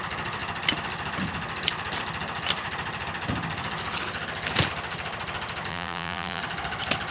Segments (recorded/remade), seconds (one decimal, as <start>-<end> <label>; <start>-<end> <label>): 0.0-5.7 recorded; 5.7-6.4 remade; 6.4-7.1 recorded